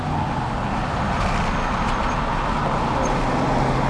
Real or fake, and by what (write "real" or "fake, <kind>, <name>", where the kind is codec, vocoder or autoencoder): real